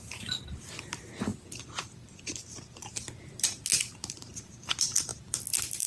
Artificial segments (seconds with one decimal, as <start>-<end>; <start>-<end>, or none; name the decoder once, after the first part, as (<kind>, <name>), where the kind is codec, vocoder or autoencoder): 0.0-5.9 (vocoder, BigVGAN v2)

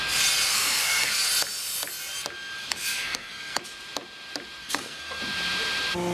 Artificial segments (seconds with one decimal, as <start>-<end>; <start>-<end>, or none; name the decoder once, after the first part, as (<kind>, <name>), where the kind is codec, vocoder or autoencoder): 0.5-1.3 (codec, SNAC); 2.6-3.6; 4.6-5.2